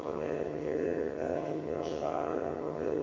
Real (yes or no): no